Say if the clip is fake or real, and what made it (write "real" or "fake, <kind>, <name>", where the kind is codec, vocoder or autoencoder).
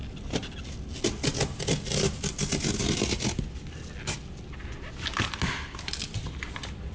real